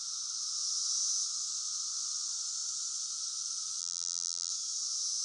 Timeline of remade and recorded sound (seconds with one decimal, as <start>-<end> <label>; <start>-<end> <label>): 0.0-3.8 recorded; 3.8-4.5 remade; 4.5-5.2 recorded